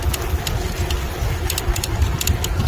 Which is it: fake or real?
real